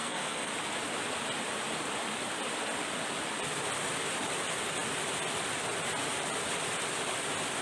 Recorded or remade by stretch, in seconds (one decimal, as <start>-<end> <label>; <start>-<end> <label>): 0.0-0.5 remade; 0.5-7.6 recorded